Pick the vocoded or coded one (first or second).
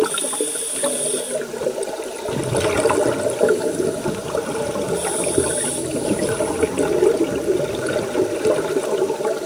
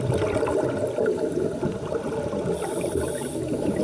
second